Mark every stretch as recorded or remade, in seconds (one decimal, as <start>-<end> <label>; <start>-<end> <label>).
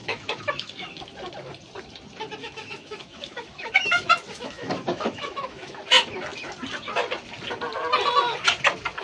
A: 0.0-1.0 remade; 1.0-2.4 recorded; 2.4-5.8 remade; 5.8-9.0 recorded